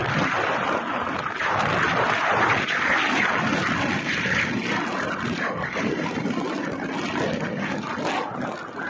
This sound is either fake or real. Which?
real